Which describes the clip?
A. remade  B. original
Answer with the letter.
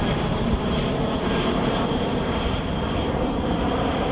A